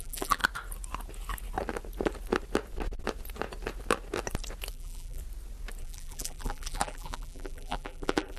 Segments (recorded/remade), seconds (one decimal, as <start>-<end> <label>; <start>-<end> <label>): 0.0-0.4 remade; 0.4-4.7 recorded; 4.7-5.2 remade; 5.2-5.8 recorded; 5.8-8.4 remade